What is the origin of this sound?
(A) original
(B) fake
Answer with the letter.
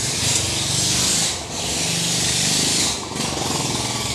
A